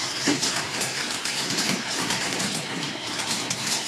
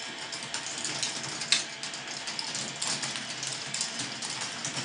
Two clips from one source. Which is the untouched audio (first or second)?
second